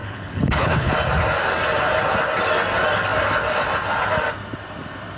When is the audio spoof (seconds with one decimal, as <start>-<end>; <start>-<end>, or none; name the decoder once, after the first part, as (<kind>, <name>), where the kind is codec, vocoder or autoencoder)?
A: 0.0-0.9 (codec, HILCodec)